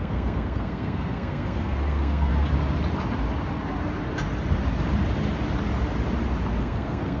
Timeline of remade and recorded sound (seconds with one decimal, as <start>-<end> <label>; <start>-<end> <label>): 0.0-2.3 remade; 2.3-6.6 recorded; 6.6-7.2 remade